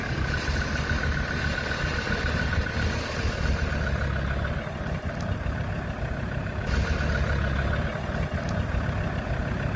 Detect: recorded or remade recorded